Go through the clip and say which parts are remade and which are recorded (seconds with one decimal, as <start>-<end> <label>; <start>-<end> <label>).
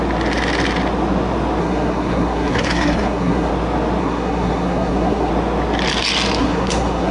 0.0-1.6 recorded; 1.6-3.5 remade; 3.5-4.0 recorded; 4.0-5.3 remade; 5.3-6.4 recorded; 6.4-7.1 remade